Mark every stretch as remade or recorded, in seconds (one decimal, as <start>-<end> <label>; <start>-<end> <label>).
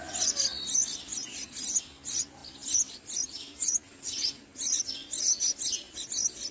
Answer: 0.0-6.5 recorded